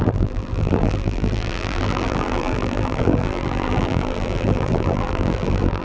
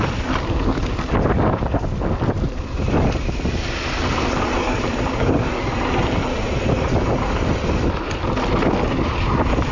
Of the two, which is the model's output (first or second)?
first